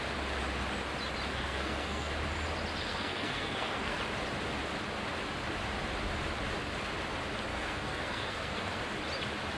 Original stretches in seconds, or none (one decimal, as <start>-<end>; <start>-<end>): 0.0-1.3; 2.1-2.8; 4.0-7.5; 8.8-9.6